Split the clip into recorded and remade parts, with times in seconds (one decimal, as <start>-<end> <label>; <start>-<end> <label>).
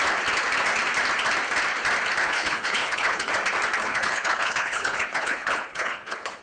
0.0-2.2 recorded; 2.2-3.3 remade; 3.3-3.8 recorded; 3.8-6.4 remade